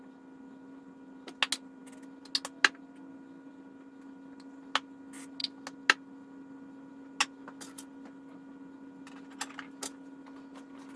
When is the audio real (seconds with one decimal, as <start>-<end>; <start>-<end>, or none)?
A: 0.0-11.0